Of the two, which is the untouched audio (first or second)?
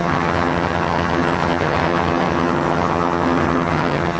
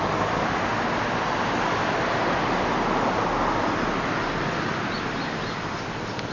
second